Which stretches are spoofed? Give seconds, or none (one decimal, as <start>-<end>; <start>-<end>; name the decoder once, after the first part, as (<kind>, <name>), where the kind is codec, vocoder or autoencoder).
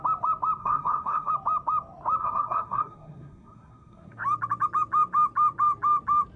0.6-1.3 (codec, SNAC); 2.2-4.2